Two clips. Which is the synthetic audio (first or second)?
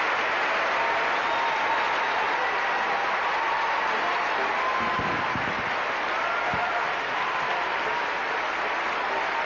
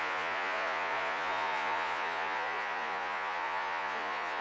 second